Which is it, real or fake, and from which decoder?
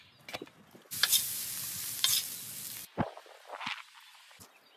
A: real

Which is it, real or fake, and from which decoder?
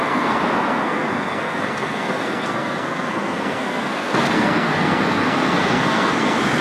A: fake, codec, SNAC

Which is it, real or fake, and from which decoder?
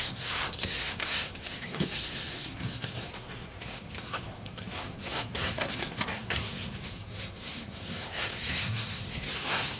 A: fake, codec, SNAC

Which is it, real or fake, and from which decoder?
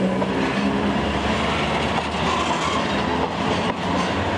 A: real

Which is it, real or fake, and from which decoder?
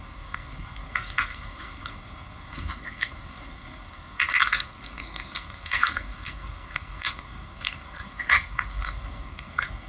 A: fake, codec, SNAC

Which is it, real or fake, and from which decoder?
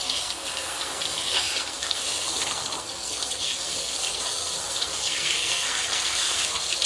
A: fake, codec, SNAC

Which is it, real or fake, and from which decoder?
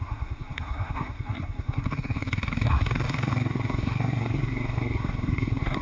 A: fake, codec, SNAC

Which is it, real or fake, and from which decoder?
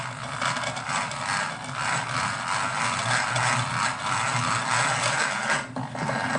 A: real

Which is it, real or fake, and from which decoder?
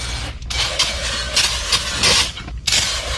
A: real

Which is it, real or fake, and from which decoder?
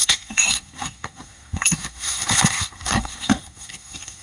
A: fake, codec, SNAC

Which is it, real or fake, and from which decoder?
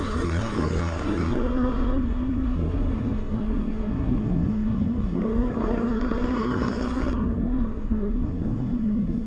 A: fake, codec, SNAC